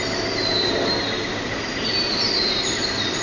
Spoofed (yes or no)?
no